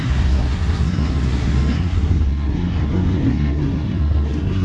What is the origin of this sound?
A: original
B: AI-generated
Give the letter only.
B